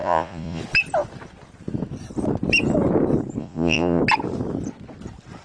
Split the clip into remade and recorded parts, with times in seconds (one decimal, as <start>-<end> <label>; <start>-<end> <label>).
0.0-0.6 remade; 0.6-3.4 recorded; 3.4-4.0 remade; 4.0-5.4 recorded